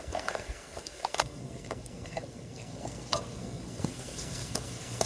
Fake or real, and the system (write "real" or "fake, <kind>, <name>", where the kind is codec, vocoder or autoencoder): fake, codec, SNAC